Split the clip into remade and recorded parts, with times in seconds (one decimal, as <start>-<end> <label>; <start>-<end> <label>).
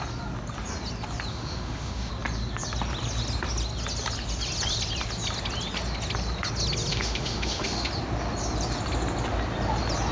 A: 0.0-1.3 recorded; 1.3-2.1 remade; 2.1-6.9 recorded; 6.9-7.9 remade; 7.9-10.1 recorded